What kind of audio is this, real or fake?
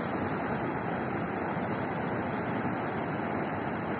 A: real